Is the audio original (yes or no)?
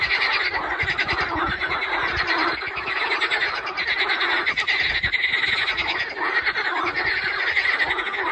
yes